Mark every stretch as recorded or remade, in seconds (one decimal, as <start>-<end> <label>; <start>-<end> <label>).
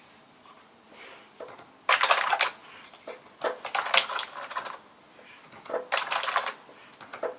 0.0-7.4 recorded